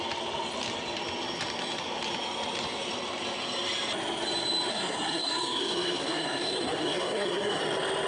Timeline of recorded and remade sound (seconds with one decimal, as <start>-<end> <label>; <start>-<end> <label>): 0.0-4.7 recorded; 4.7-7.6 remade; 7.6-8.1 recorded

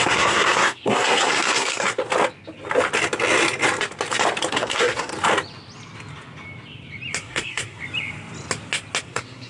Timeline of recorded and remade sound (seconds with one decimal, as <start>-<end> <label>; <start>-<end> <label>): 0.0-2.0 remade; 2.0-4.5 recorded; 4.5-5.1 remade; 5.1-7.2 recorded; 7.2-7.8 remade; 7.8-9.0 recorded; 9.0-9.5 remade

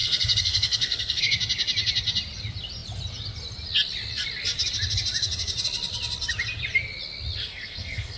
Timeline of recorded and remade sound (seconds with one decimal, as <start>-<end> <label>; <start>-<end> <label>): 0.0-1.2 remade; 1.2-7.4 recorded; 7.4-8.2 remade

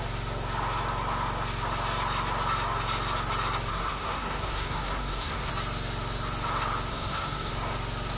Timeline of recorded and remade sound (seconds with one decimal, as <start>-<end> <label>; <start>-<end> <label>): 0.0-3.7 recorded; 3.7-5.5 remade; 5.5-6.9 recorded; 6.9-7.5 remade; 7.5-8.2 recorded

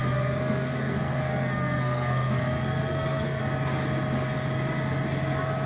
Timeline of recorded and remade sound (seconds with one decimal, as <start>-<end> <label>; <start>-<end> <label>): 0.0-3.4 remade; 3.4-5.7 recorded

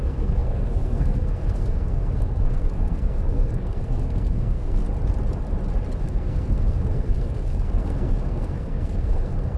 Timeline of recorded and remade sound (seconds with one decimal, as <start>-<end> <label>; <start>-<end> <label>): 0.0-4.8 remade; 4.8-6.0 recorded; 6.0-9.6 remade